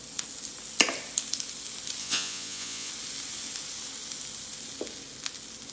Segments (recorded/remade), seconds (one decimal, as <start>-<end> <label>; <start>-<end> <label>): 0.0-2.0 recorded; 2.0-2.9 remade; 2.9-5.7 recorded

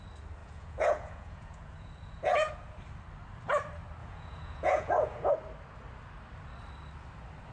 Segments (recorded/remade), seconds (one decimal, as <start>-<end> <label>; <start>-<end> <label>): 0.0-0.4 recorded; 0.4-2.5 remade; 2.5-4.0 recorded; 4.0-5.3 remade; 5.3-7.5 recorded